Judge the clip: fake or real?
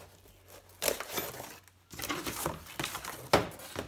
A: real